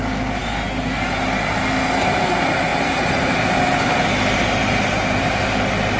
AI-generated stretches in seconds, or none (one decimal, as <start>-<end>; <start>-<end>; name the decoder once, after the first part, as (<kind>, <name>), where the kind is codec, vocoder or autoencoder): 2.7-3.9 (vocoder, BigVGAN v2); 4.6-5.4